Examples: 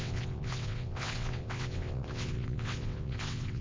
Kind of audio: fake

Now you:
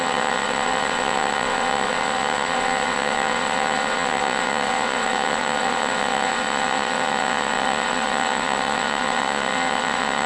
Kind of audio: fake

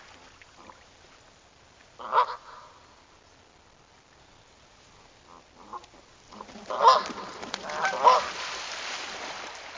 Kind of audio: real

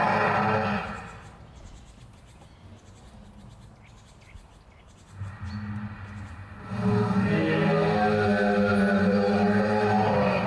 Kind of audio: real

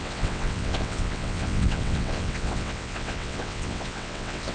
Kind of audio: fake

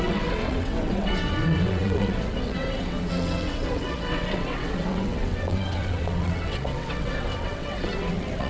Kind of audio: fake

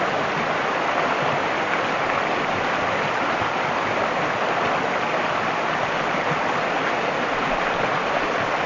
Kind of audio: real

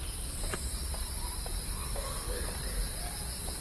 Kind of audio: real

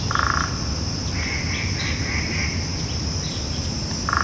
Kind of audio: real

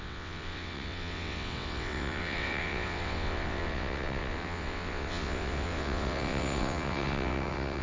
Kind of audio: fake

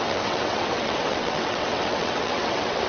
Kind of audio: fake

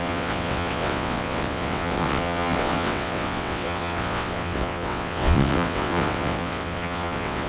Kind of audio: fake